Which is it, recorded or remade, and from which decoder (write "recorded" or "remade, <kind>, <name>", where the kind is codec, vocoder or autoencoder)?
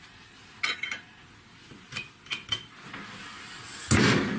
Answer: recorded